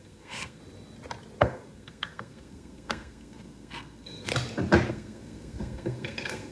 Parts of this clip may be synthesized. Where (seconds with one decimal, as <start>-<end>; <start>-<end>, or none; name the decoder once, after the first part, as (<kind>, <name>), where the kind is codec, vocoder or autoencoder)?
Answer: 0.0-0.6 (codec, SNAC); 1.4-4.3; 4.9-6.5